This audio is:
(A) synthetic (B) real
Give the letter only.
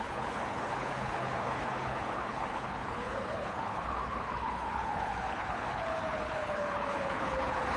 A